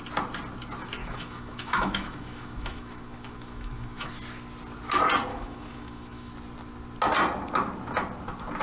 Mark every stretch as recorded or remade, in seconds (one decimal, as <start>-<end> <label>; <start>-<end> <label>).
0.0-1.0 recorded; 1.0-4.1 remade; 4.1-5.3 recorded; 5.3-6.3 remade; 6.3-8.6 recorded